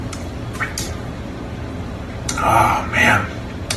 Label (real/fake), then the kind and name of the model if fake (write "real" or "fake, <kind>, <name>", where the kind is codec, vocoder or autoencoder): real